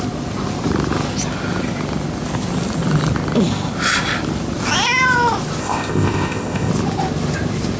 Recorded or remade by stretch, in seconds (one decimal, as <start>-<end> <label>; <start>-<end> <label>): 0.0-5.6 recorded; 5.6-6.7 remade; 6.7-7.8 recorded